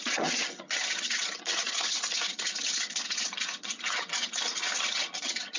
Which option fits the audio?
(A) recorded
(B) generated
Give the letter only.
B